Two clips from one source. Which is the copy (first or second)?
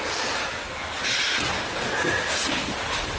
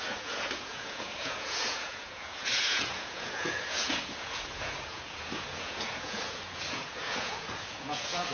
second